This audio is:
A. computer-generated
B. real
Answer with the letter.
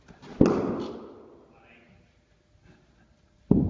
B